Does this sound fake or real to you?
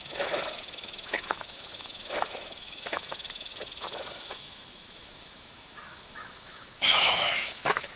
fake